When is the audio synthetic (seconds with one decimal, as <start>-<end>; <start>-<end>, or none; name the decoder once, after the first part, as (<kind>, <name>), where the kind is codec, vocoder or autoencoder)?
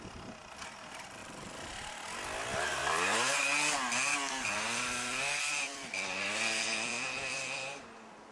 1.2-1.9 (vocoder, BigVGAN v2); 2.8-3.4; 4.1-8.3